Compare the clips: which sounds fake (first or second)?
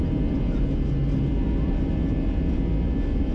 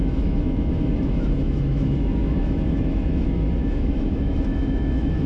second